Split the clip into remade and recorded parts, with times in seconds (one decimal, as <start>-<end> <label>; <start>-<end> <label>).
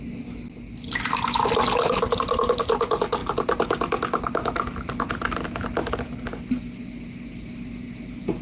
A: 0.0-8.4 recorded